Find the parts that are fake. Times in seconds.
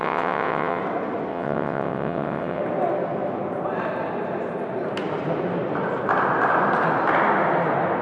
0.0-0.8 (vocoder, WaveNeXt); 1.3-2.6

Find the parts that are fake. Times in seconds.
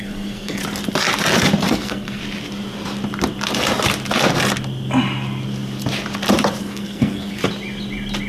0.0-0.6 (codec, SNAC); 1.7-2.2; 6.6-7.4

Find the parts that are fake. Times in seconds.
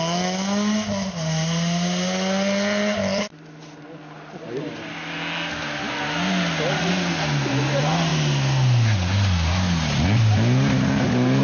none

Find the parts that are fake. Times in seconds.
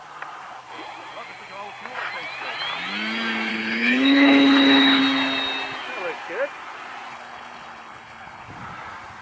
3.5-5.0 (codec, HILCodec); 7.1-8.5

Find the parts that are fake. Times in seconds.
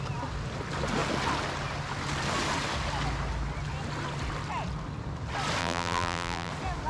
5.6-6.5 (vocoder, BigVGAN v2)